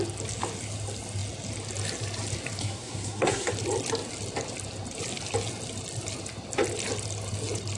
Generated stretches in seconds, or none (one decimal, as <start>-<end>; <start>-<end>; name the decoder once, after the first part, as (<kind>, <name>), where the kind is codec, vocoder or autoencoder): 2.6-3.5 (codec, SNAC)